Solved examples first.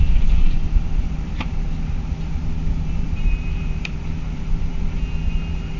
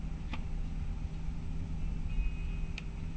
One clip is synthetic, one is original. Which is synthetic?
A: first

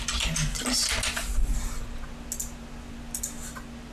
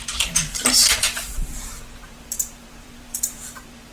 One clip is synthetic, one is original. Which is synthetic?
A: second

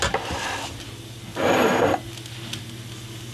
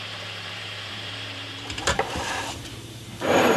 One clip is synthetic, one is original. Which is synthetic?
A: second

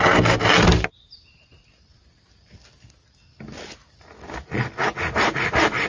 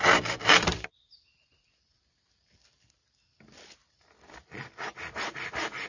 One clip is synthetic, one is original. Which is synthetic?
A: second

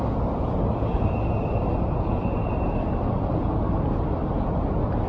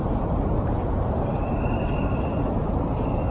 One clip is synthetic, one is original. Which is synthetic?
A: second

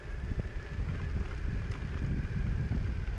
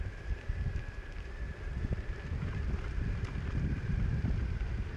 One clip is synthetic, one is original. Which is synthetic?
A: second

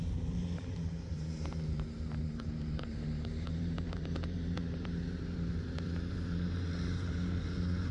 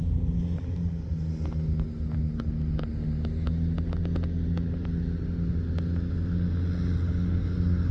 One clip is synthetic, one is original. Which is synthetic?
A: first